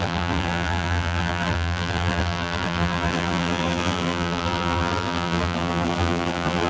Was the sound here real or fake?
fake